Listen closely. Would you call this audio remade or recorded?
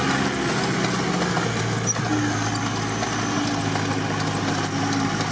recorded